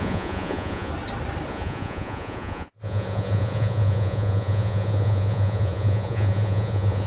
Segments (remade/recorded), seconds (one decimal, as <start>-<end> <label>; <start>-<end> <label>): 0.0-0.9 remade; 0.9-1.5 recorded; 1.5-7.1 remade